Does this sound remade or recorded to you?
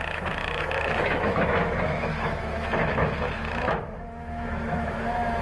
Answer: remade